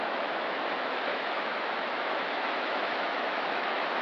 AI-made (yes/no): yes